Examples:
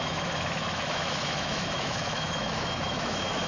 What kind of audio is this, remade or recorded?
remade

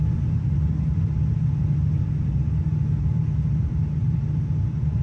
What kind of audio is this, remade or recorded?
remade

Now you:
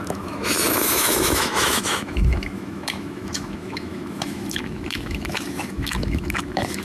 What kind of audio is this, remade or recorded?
remade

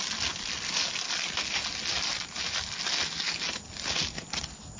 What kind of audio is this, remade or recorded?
recorded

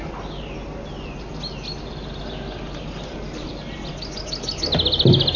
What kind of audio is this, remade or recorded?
recorded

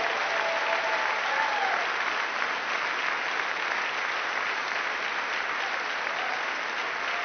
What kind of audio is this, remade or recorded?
recorded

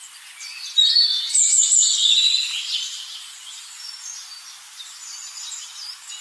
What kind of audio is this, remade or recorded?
recorded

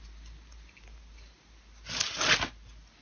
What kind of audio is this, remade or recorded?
recorded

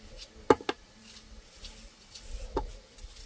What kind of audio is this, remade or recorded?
recorded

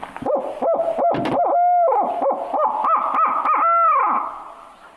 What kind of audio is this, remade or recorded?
recorded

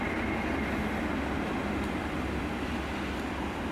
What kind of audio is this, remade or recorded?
recorded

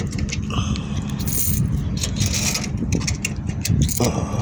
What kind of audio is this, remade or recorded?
recorded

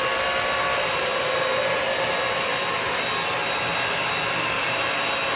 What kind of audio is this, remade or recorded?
recorded